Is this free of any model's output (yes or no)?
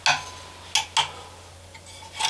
yes